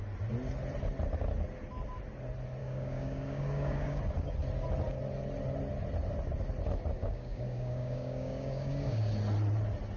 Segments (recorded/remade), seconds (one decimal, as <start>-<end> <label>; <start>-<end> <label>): 0.0-2.6 recorded; 2.6-4.0 remade; 4.0-7.0 recorded; 7.0-9.1 remade; 9.1-10.0 recorded